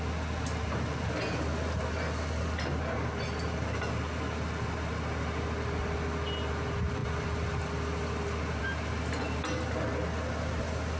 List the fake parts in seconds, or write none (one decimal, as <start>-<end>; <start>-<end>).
none